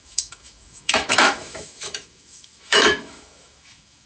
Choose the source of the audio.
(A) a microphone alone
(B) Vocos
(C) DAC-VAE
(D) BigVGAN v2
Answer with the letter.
C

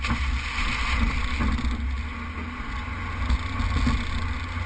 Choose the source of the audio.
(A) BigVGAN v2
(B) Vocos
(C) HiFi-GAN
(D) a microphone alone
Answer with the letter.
D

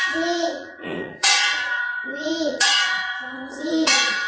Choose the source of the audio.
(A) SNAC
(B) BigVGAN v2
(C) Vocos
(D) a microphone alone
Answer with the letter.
C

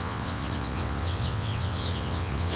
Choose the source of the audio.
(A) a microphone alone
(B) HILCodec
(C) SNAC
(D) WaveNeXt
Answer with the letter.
D